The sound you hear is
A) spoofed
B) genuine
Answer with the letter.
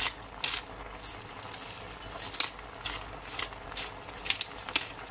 B